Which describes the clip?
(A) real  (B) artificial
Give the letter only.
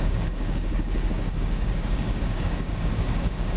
B